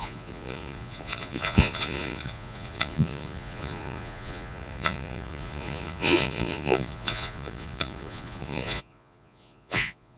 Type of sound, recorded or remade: remade